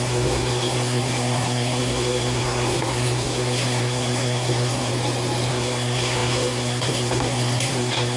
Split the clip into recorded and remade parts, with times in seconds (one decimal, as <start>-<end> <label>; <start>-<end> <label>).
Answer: 0.0-4.9 remade; 4.9-5.5 recorded; 5.5-8.2 remade